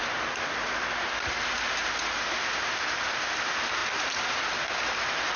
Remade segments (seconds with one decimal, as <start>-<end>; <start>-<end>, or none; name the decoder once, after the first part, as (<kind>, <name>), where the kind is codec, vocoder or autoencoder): none